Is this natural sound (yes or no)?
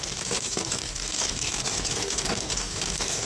no